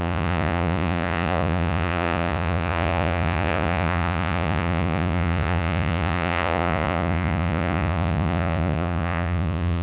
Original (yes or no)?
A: no